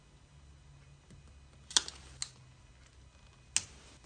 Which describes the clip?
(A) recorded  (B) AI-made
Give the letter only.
A